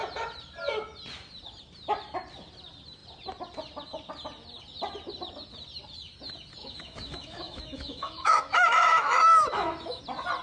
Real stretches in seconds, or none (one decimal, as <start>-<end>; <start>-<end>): 0.0-6.6; 10.0-10.4